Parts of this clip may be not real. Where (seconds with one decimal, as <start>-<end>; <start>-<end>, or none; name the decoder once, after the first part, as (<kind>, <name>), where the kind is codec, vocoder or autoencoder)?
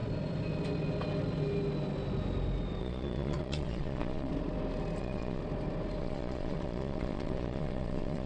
2.8-4.3 (vocoder, Vocos); 5.0-5.4; 6.0-8.3